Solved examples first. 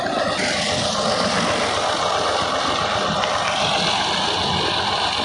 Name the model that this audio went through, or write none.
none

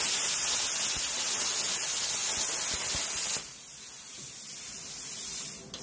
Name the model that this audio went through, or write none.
none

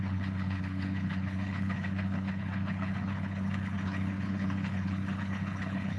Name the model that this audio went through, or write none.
codec, HILCodec